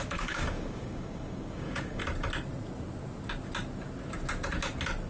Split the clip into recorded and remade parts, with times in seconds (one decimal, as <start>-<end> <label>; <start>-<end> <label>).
0.0-2.0 remade; 2.0-5.1 recorded

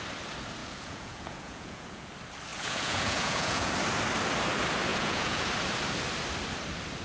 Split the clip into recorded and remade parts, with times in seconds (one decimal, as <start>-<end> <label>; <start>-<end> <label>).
0.0-0.6 recorded; 0.6-2.1 remade; 2.1-2.5 recorded; 2.5-3.7 remade; 3.7-4.9 recorded; 4.9-5.5 remade; 5.5-7.0 recorded

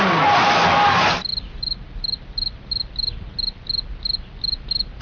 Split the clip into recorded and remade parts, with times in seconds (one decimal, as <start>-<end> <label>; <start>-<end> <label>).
0.0-1.3 remade; 1.3-4.3 recorded; 4.3-5.0 remade

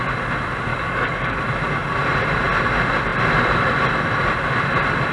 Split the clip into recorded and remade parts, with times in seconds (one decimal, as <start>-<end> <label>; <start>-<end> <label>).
0.0-0.7 recorded; 0.7-1.4 remade; 1.4-5.1 recorded

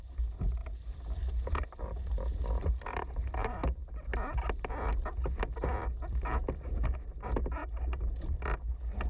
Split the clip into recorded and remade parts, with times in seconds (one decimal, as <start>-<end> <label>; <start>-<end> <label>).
0.0-3.8 remade; 3.8-9.1 recorded

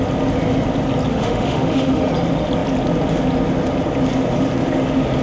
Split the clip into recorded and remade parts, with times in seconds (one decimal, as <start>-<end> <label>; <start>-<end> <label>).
0.0-1.1 recorded; 1.1-2.1 remade; 2.1-5.2 recorded

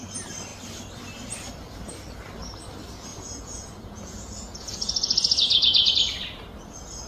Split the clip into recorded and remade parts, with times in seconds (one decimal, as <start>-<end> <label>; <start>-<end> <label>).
0.0-3.1 recorded; 3.1-5.9 remade; 5.9-7.1 recorded